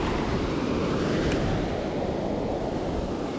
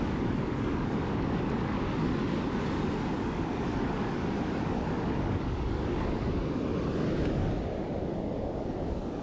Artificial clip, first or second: second